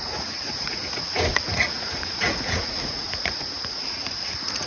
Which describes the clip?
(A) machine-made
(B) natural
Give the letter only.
A